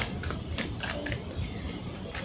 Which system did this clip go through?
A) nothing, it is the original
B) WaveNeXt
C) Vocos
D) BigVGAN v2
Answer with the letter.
A